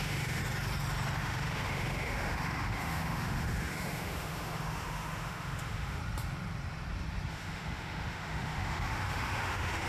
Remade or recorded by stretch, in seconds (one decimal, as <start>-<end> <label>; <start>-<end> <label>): 0.0-0.4 remade; 0.4-1.2 recorded; 1.2-6.0 remade; 6.0-7.3 recorded; 7.3-9.9 remade